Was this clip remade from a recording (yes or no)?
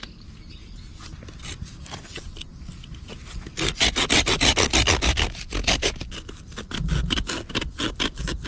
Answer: no